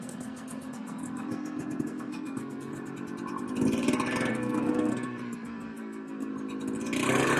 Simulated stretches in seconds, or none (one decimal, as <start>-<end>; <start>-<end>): 0.0-2.7; 4.3-6.3